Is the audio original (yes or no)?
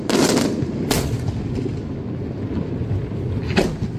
yes